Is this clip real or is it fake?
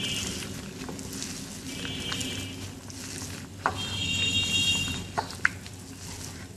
real